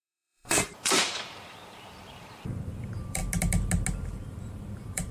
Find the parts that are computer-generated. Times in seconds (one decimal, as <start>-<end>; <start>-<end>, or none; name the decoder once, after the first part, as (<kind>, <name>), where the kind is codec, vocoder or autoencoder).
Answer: 0.0-3.2 (vocoder, BigVGAN v2); 4.0-5.1